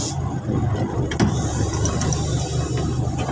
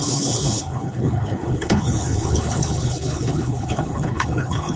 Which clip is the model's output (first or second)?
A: second